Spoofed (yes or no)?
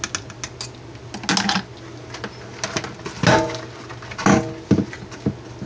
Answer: no